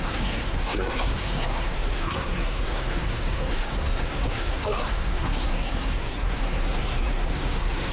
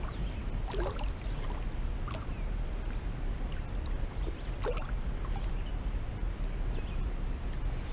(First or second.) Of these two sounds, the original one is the second